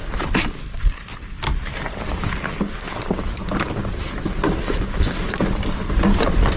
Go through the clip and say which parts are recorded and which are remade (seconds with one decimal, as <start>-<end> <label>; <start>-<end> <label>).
0.0-6.6 recorded